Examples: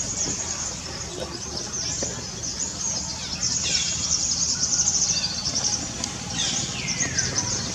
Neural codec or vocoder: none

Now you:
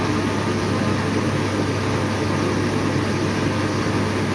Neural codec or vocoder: none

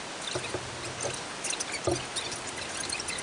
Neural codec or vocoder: none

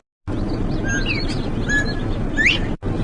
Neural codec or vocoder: none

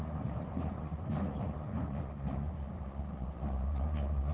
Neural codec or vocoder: vocoder, Vocos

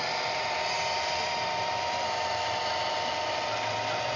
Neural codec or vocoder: none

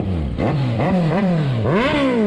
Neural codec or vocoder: vocoder, BigVGAN v2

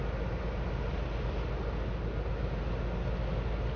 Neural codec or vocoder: none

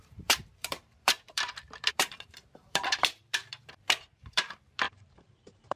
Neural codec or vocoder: vocoder, BigVGAN v2